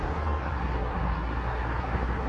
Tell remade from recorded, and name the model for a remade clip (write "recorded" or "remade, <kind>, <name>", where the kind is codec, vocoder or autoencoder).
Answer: remade, codec, SNAC